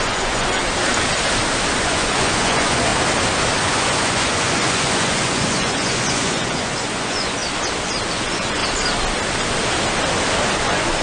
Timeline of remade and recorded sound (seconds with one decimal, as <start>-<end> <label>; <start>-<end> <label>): 0.0-0.6 remade; 0.6-1.8 recorded; 1.8-2.9 remade; 2.9-3.6 recorded; 3.6-7.4 remade; 7.4-8.1 recorded; 8.1-8.6 remade; 8.6-10.6 recorded; 10.6-11.0 remade